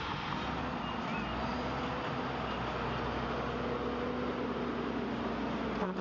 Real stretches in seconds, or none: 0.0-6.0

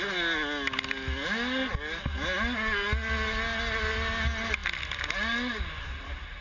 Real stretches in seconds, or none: 0.0-6.4

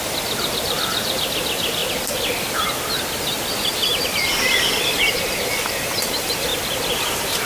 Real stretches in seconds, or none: 1.8-2.9; 6.5-7.0

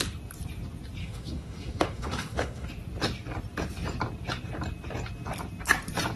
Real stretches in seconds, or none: 0.0-1.0; 2.7-6.2

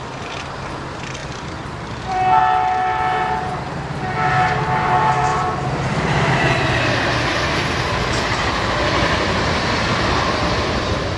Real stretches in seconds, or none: 0.0-1.2; 2.4-5.3; 6.4-11.2